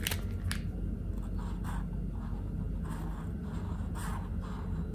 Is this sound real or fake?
real